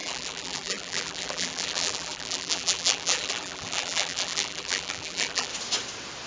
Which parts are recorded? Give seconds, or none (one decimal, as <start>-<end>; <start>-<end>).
5.5-6.3